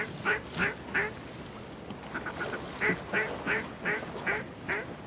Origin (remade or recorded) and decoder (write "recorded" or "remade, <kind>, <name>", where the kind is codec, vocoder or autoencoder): recorded